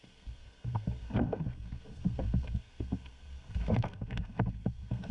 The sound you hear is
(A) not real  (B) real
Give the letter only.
A